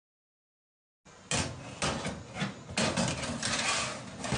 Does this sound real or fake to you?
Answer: real